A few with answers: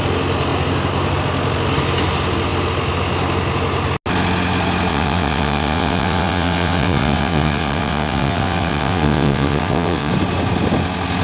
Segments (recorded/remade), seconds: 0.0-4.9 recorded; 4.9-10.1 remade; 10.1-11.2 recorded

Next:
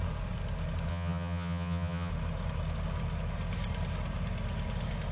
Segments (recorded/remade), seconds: 0.0-0.9 recorded; 0.9-2.1 remade; 2.1-5.1 recorded

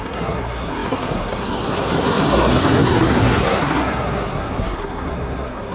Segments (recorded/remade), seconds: 0.0-5.7 remade

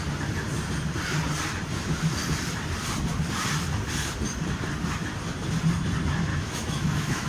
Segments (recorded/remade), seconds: 0.0-6.3 recorded; 6.3-7.3 remade

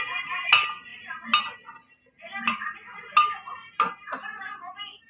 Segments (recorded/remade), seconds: 0.0-5.1 recorded